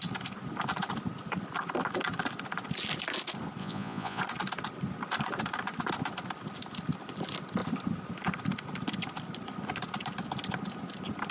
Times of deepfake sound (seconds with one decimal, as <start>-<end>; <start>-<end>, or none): 3.6-4.2